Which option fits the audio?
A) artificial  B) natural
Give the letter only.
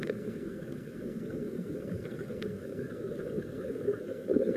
A